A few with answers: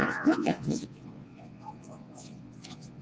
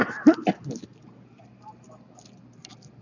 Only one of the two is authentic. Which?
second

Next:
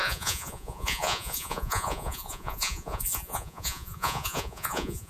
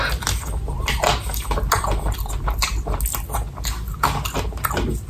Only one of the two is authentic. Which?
second